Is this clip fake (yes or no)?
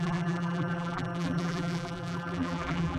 yes